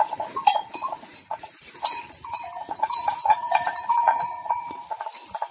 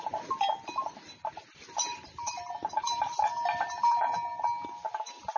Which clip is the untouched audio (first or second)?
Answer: second